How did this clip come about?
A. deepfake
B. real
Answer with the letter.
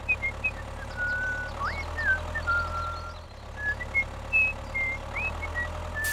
B